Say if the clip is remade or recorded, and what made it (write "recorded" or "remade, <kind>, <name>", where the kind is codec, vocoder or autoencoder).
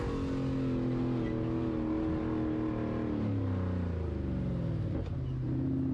recorded